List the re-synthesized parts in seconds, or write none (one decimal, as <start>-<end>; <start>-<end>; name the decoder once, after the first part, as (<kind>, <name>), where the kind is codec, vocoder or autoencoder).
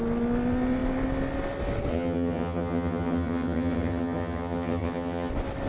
1.9-5.3 (vocoder, HiFi-GAN)